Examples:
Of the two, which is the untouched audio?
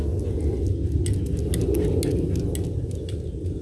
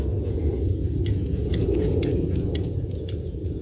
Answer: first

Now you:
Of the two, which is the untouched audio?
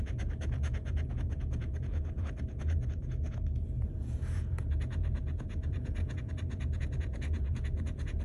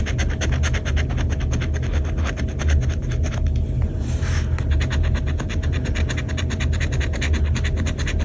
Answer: second